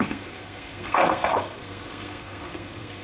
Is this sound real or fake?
fake